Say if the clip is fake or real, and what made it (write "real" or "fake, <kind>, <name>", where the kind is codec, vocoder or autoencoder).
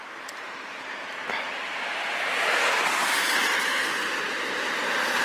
fake, vocoder, BigVGAN v2